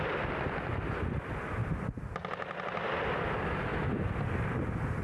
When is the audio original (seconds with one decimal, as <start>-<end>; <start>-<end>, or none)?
0.0-5.0